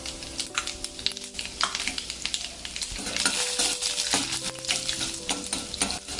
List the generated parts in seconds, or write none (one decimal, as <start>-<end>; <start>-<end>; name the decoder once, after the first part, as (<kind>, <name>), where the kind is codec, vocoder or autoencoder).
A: none